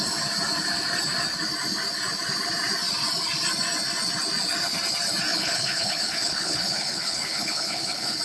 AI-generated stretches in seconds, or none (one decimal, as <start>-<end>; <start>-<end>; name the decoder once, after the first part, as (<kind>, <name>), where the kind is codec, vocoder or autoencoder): 5.3-8.2 (codec, HILCodec)